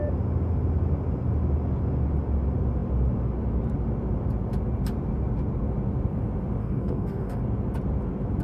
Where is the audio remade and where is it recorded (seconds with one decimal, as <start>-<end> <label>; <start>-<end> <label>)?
0.0-6.6 recorded; 6.6-7.4 remade; 7.4-8.4 recorded